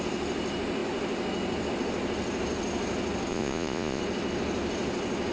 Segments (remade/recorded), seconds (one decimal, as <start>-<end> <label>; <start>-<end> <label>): 0.0-3.3 recorded; 3.3-4.0 remade; 4.0-5.3 recorded